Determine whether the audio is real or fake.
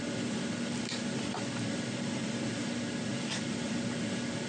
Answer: real